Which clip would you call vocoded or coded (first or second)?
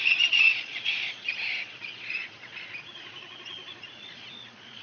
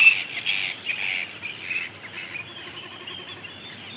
first